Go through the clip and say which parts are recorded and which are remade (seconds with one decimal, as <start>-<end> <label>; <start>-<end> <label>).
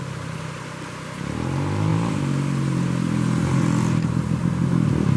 0.0-5.2 recorded